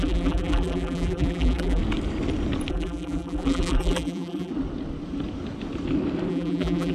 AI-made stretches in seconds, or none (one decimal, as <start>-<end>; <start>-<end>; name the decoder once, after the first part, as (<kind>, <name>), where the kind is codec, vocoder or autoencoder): 0.0-1.8 (vocoder, BigVGAN v2); 2.7-4.5; 6.3-6.9